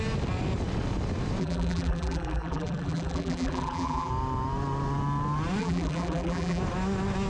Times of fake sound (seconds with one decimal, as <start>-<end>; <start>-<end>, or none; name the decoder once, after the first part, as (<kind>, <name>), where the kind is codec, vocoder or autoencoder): 1.4-4.1 (vocoder, BigVGAN v2); 5.6-6.6